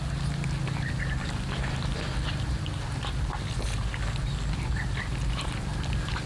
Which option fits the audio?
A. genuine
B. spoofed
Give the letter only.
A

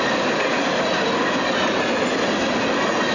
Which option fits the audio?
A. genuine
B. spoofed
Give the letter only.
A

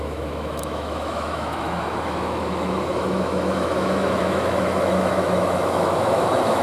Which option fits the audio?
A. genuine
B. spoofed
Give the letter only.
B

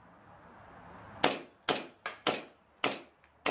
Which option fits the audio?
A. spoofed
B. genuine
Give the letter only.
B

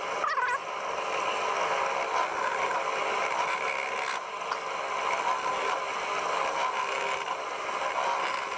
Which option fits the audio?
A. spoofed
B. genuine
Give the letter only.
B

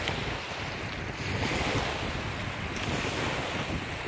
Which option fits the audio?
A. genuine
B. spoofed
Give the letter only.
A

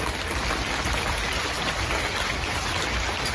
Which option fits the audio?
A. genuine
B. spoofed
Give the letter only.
A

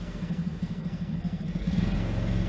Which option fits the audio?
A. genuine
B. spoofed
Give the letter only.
B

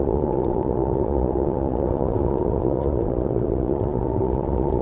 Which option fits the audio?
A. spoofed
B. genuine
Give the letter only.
A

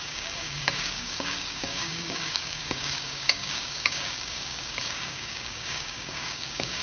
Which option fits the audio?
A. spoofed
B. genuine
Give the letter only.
A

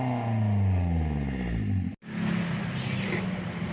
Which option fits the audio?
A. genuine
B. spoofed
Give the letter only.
A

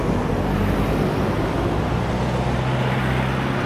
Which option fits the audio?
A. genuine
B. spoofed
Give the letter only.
A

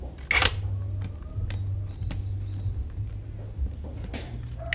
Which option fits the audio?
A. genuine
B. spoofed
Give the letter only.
A